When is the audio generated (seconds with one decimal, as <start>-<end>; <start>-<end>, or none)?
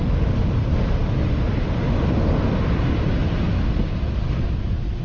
none